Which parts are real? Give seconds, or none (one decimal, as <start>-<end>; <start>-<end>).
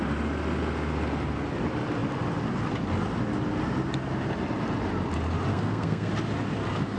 0.0-5.5; 6.1-7.0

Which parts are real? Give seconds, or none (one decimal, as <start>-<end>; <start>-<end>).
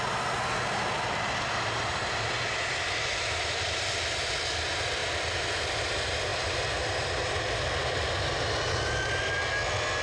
0.0-10.0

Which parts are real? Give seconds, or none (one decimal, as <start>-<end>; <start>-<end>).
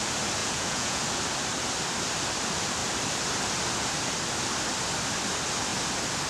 0.0-0.4; 1.0-6.3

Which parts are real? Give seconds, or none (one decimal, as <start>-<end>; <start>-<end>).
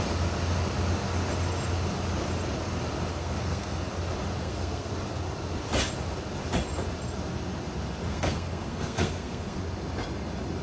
0.0-3.1; 3.8-4.4; 4.9-8.1; 9.6-10.6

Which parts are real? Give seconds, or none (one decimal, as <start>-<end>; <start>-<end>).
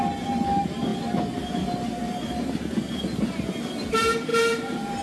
0.0-5.0